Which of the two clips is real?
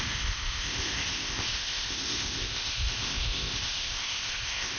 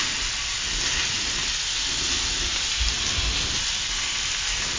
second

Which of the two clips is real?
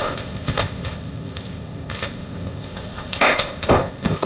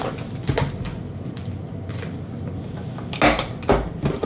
second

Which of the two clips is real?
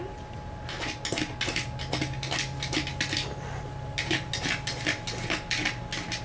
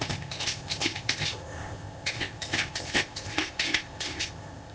first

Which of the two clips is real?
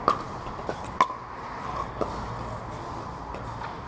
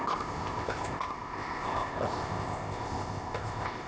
first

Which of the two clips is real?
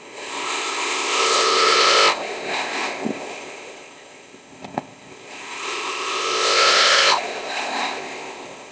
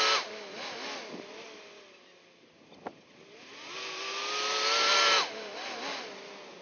second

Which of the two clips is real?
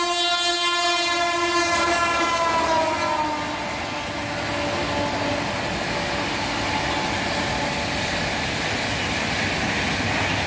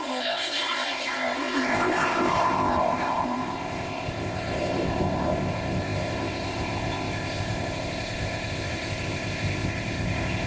first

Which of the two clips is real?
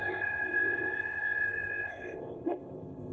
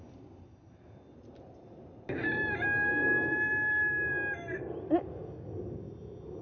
second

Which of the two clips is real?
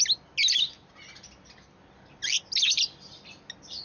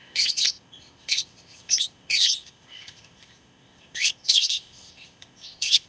first